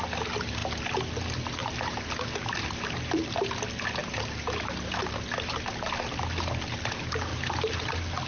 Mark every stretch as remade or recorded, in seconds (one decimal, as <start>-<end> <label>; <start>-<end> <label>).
0.0-1.6 recorded; 1.6-2.1 remade; 2.1-4.0 recorded; 4.0-5.0 remade; 5.0-7.3 recorded; 7.3-7.9 remade; 7.9-8.3 recorded